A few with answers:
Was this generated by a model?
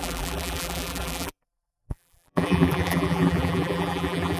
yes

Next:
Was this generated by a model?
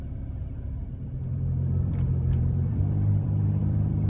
yes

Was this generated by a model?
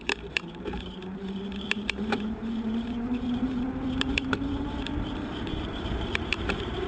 yes